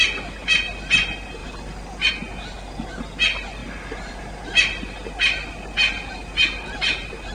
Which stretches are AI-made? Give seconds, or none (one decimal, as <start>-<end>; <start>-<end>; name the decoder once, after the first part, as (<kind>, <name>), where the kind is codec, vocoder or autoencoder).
0.4-1.0 (vocoder, BigVGAN v2); 1.4-2.1; 3.6-7.3